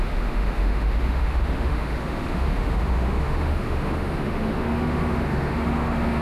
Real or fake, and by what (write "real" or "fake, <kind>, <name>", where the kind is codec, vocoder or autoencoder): fake, autoencoder, DAC-VAE